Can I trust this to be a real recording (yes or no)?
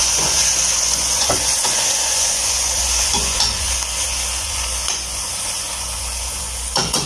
no